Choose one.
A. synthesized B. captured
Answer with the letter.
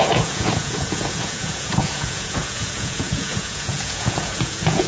A